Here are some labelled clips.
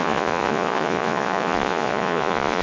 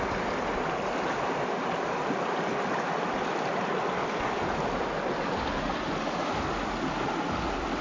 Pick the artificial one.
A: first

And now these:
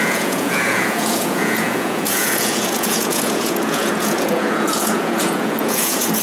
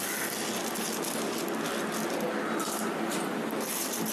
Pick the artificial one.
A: first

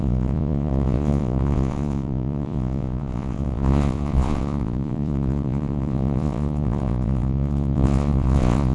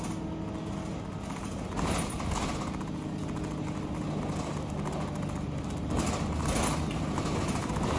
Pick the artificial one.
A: first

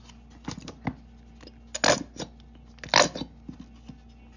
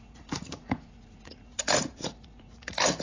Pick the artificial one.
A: second